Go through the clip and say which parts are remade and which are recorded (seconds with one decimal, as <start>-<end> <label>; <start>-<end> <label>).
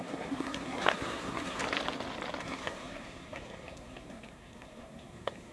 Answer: 0.0-1.6 remade; 1.6-2.4 recorded; 2.4-5.5 remade